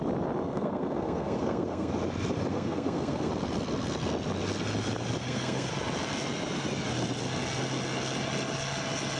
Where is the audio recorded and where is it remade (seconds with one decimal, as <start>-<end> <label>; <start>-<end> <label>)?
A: 0.0-0.4 recorded; 0.4-1.9 remade; 1.9-2.5 recorded; 2.5-3.3 remade; 3.3-5.2 recorded; 5.2-5.7 remade; 5.7-9.2 recorded